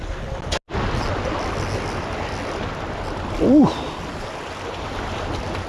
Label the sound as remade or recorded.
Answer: recorded